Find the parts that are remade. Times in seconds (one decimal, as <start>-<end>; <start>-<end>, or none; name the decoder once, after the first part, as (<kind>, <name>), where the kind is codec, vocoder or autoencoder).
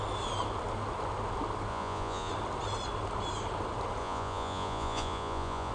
1.7-2.3 (vocoder, Vocos); 4.0-5.7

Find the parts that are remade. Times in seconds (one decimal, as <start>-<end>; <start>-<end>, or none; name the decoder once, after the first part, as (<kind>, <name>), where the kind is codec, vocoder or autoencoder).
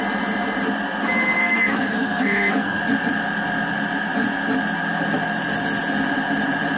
1.4-2.8 (codec, SNAC)